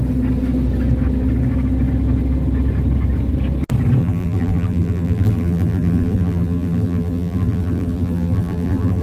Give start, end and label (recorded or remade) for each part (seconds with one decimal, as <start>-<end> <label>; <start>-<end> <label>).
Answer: 0.0-4.0 recorded; 4.0-9.0 remade